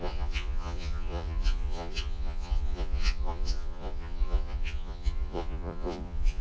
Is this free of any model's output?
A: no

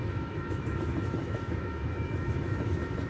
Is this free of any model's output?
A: no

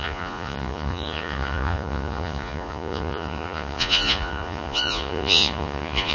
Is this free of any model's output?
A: no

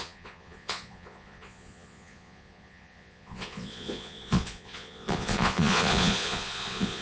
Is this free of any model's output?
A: no